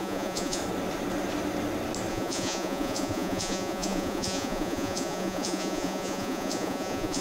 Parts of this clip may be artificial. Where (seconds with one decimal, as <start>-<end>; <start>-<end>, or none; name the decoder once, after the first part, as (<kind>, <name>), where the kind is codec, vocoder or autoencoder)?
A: 0.0-0.6 (vocoder, Vocos); 2.1-7.2